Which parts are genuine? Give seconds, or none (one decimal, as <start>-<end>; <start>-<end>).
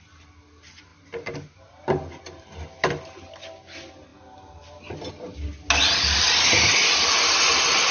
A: 0.0-7.9